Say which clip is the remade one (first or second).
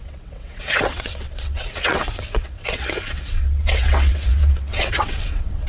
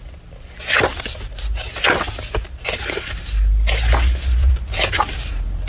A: first